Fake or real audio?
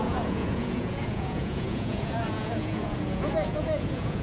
fake